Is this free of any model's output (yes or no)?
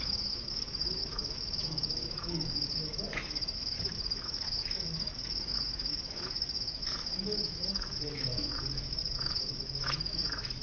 no